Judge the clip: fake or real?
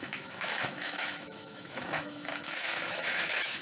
fake